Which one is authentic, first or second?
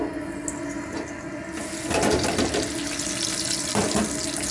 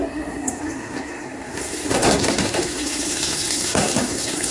first